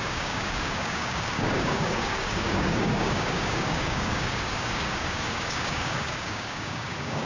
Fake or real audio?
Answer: fake